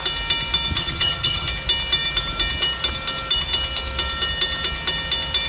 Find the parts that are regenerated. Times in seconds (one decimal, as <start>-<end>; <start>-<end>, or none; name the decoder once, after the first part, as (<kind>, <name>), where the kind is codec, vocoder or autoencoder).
0.8-1.5 (vocoder, HiFi-GAN)